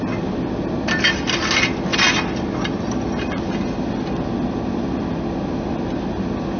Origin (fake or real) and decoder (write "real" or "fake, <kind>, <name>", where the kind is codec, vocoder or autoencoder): real